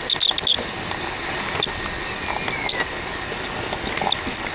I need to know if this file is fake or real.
real